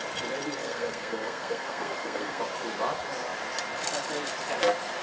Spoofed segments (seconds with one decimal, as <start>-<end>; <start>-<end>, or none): 0.6-2.4